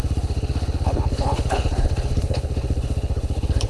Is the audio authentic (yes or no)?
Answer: no